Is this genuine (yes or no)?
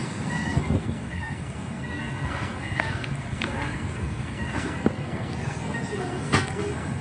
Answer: no